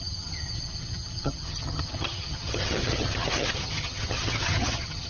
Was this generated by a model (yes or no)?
yes